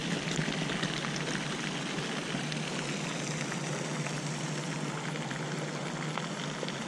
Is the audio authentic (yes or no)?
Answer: yes